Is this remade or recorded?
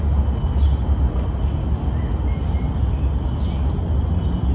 recorded